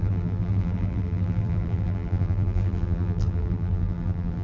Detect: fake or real fake